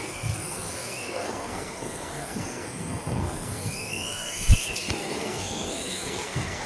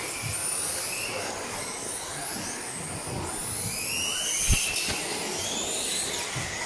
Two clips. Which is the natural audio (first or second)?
second